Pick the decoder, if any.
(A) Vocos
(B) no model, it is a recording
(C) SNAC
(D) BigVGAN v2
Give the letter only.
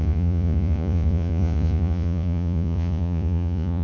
A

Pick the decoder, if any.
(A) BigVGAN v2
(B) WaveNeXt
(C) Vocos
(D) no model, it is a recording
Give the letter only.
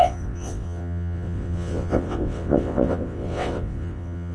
B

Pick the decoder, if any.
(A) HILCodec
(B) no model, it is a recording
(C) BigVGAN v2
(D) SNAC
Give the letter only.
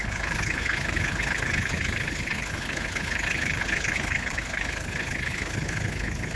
A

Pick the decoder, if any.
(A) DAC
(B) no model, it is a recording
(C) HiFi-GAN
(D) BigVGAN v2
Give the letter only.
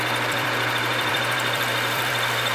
D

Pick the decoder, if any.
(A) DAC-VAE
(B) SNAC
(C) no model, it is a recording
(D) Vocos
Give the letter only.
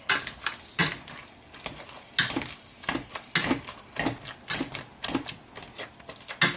C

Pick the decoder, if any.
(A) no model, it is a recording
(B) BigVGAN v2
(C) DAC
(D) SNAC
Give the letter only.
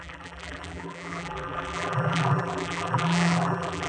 B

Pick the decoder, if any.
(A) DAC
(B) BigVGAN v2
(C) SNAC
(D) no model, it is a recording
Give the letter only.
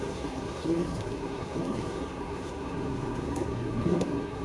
C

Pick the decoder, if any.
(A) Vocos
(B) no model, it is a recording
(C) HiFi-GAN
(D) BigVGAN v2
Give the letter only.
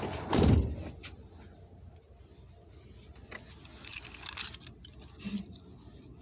B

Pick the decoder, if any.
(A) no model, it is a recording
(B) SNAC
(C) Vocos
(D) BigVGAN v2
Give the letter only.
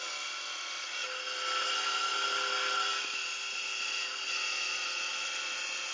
A